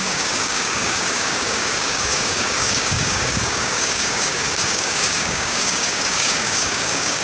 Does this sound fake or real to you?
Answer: fake